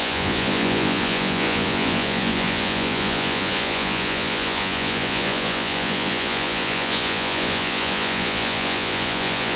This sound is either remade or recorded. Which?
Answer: remade